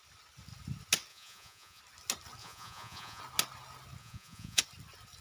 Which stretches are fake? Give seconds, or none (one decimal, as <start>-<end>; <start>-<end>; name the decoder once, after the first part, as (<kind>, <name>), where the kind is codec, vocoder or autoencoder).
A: 1.1-1.8 (vocoder, Vocos); 2.4-3.2; 4.0-4.6

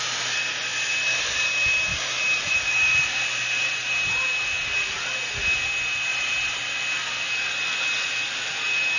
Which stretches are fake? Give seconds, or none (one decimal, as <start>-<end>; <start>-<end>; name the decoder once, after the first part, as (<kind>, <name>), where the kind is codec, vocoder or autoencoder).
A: 1.9-3.7 (vocoder, BigVGAN v2); 6.1-6.6

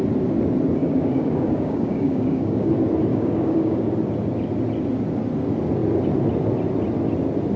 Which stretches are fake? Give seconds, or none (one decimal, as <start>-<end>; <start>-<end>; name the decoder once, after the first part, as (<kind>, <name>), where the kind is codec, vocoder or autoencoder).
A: 0.8-2.7 (codec, DAC); 3.1-3.9

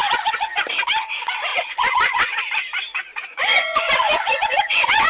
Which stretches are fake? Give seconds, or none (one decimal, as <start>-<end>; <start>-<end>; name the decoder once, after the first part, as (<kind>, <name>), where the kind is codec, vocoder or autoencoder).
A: 0.0-0.7 (vocoder, Vocos); 1.5-2.4; 3.1-5.1

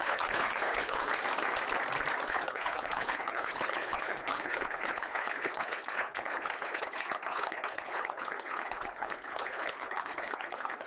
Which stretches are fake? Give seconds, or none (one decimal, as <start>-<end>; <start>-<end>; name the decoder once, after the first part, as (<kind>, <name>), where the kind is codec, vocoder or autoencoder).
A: 0.0-1.1 (codec, HILCodec); 2.3-10.9

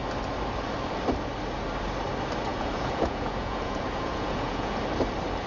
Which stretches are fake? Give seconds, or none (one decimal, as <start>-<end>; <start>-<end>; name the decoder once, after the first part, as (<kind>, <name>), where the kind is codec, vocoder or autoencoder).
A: 2.5-4.8 (vocoder, Vocos)